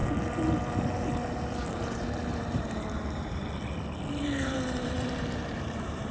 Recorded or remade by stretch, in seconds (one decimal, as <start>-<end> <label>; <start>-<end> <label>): 0.0-1.7 recorded; 1.7-3.4 remade; 3.4-4.2 recorded; 4.2-6.1 remade